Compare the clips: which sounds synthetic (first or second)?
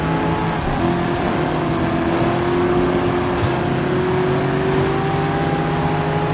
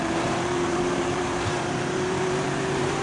second